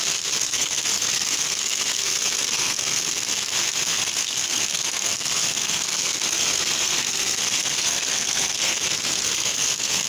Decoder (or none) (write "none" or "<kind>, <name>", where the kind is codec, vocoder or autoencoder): codec, SNAC